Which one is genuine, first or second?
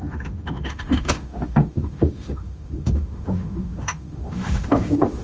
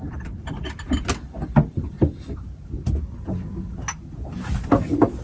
second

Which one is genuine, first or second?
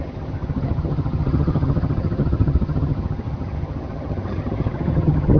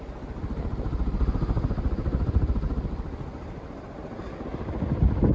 second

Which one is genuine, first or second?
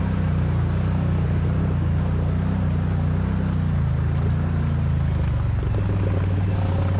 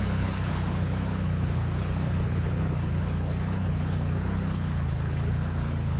first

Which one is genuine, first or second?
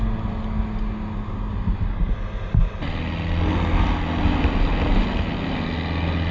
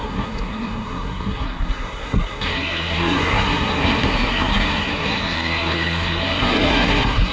first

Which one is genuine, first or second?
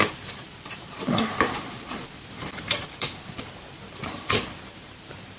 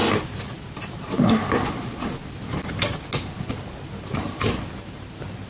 second